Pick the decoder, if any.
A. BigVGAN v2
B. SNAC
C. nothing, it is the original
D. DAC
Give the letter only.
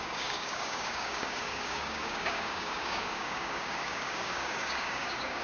D